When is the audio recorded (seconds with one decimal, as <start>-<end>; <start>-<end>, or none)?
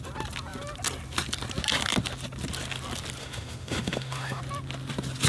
0.0-3.2; 4.4-5.3